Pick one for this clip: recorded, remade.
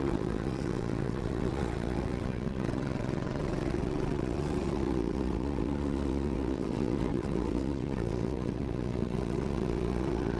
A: remade